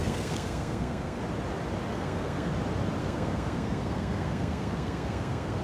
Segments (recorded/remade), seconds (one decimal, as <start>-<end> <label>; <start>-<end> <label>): 0.0-1.2 remade; 1.2-1.9 recorded; 1.9-2.5 remade; 2.5-3.0 recorded; 3.0-5.6 remade